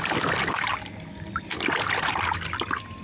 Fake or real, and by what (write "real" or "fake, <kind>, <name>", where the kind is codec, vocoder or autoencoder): real